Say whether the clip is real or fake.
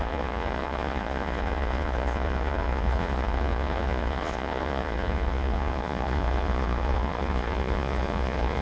fake